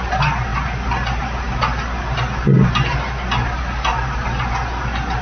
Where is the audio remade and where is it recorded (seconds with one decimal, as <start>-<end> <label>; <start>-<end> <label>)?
0.0-5.2 recorded